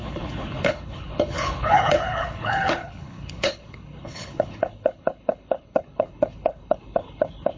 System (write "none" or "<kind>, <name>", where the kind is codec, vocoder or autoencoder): codec, HILCodec